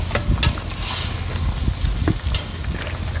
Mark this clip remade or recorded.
recorded